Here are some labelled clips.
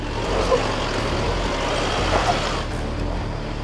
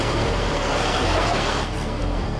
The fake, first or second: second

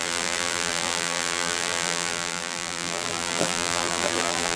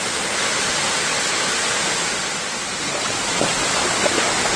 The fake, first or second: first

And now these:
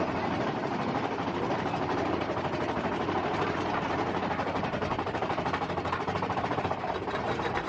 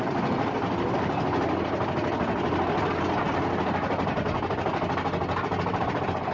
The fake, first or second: first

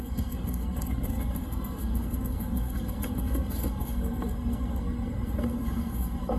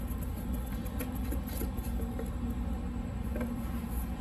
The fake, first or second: first